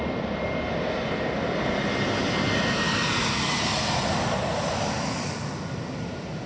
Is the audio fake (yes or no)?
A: no